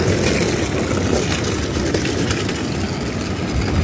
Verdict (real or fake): real